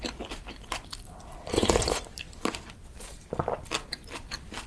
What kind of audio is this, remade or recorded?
remade